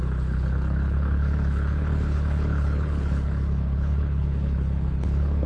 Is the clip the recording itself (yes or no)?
no